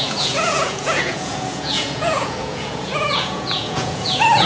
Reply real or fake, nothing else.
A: fake